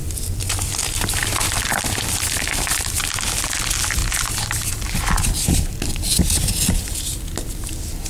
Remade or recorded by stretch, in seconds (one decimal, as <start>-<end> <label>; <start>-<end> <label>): 0.0-0.7 remade; 0.7-1.2 recorded; 1.2-3.0 remade; 3.0-4.0 recorded; 4.0-4.7 remade; 4.7-8.1 recorded